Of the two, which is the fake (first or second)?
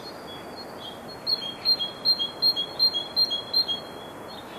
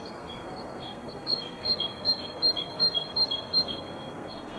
second